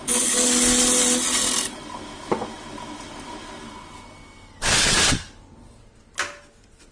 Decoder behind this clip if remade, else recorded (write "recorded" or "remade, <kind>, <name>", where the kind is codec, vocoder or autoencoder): recorded